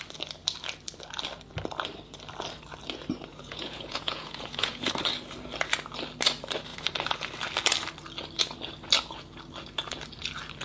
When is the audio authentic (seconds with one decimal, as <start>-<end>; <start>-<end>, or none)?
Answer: 0.0-3.3; 4.9-10.6